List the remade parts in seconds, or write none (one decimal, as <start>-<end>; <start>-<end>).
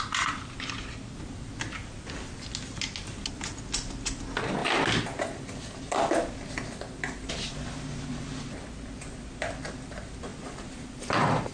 none